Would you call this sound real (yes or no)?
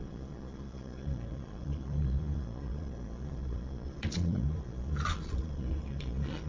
no